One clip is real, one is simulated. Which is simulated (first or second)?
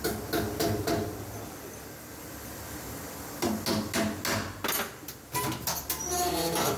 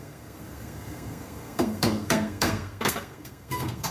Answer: second